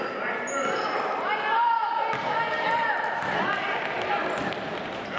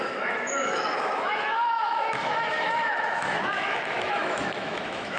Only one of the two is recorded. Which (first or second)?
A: first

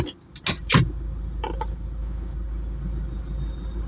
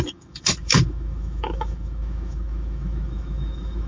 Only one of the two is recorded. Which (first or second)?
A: first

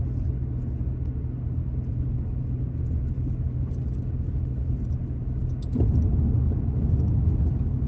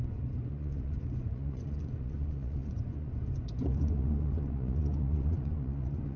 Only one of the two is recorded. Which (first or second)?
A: first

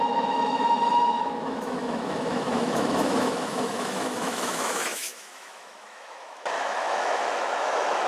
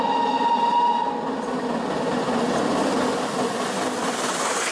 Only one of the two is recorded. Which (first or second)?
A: second